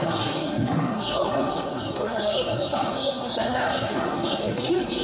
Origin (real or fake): fake